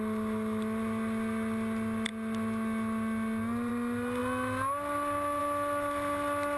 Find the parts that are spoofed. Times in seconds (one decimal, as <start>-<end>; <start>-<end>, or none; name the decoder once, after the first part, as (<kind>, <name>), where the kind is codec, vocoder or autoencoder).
none